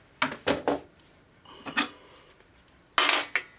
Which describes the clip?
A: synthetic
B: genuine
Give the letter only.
B